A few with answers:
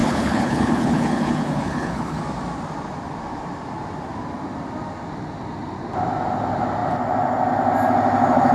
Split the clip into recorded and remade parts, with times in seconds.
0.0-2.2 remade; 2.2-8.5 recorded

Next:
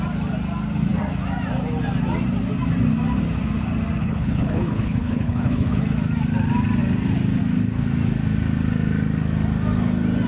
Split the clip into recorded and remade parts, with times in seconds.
0.0-4.0 recorded; 4.0-5.8 remade; 5.8-10.3 recorded

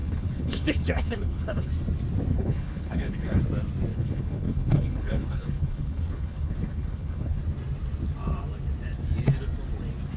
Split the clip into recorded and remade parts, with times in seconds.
0.0-1.7 remade; 1.7-2.3 recorded; 2.3-3.4 remade; 3.4-3.9 recorded; 3.9-7.4 remade; 7.4-10.2 recorded

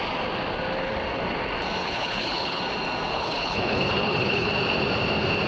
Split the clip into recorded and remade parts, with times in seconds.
0.0-1.8 recorded; 1.8-2.6 remade; 2.6-3.1 recorded; 3.1-4.5 remade; 4.5-5.5 recorded